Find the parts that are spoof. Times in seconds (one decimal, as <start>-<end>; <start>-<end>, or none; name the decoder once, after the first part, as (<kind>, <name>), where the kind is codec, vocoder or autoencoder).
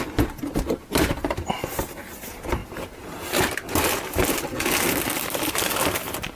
none